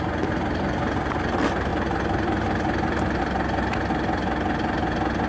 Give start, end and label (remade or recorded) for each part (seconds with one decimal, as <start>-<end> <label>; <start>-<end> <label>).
0.0-5.3 recorded